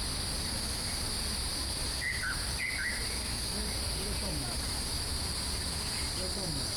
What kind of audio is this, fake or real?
real